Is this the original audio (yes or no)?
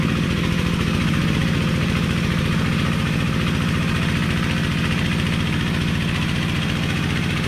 no